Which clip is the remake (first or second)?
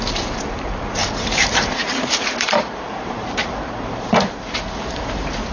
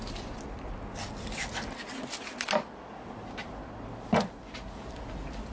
first